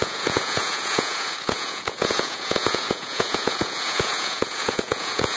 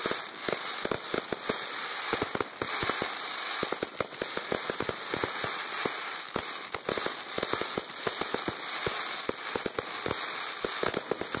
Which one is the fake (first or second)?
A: first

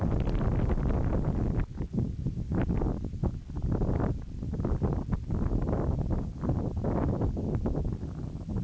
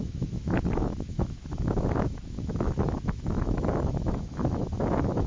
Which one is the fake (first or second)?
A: second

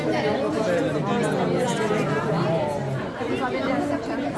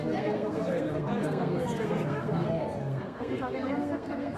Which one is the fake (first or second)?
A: second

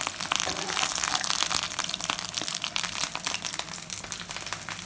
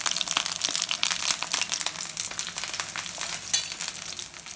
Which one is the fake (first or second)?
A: first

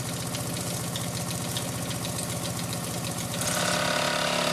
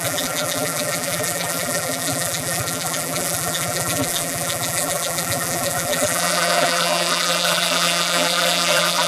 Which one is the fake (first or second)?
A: second